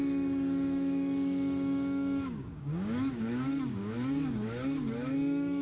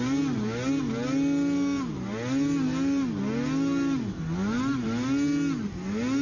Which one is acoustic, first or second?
second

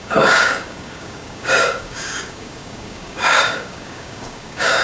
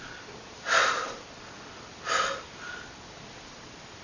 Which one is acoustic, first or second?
second